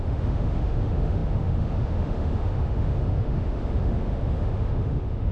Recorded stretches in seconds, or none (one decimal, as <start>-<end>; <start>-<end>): none